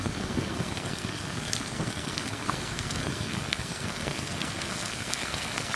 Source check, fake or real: fake